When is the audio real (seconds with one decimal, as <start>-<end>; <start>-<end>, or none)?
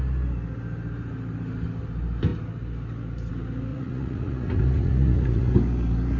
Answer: 0.0-3.7; 5.5-6.2